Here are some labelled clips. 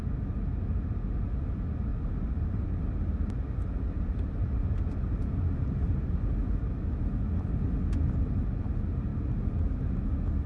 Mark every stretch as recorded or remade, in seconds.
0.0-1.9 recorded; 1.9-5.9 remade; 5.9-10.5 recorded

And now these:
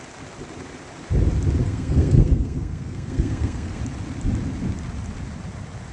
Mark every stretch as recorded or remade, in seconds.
0.0-1.6 recorded; 1.6-3.8 remade; 3.8-5.9 recorded

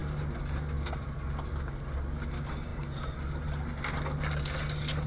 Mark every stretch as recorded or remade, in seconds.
0.0-5.1 recorded

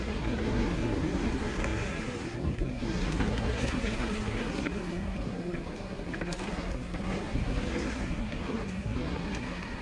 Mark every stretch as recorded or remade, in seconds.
0.0-9.8 remade

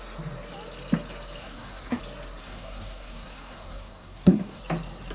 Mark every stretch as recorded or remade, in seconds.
0.0-1.4 recorded; 1.4-2.0 remade; 2.0-2.4 recorded; 2.4-4.6 remade; 4.6-5.1 recorded